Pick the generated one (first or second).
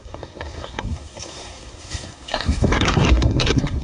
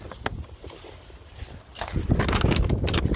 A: first